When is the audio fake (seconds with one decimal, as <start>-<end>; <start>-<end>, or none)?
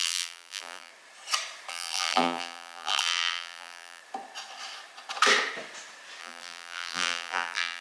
0.0-0.9; 1.7-4.0; 6.2-7.8